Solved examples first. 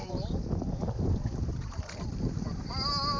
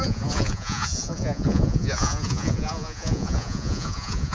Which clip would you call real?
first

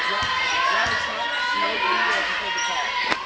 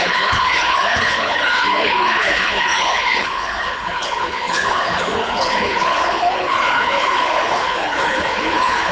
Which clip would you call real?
first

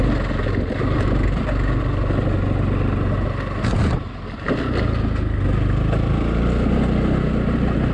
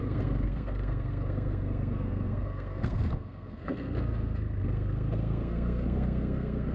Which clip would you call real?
first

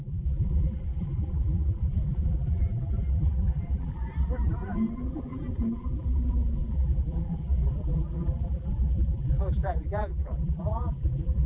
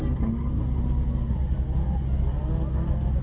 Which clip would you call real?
second